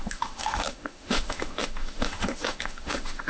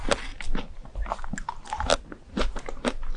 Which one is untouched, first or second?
second